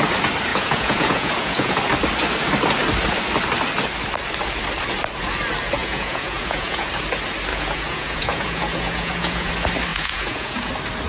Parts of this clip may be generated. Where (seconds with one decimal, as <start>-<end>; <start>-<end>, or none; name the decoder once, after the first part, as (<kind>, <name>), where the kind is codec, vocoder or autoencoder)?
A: 0.5-1.8 (vocoder, Vocos); 5.8-6.9; 7.5-9.5; 9.9-10.7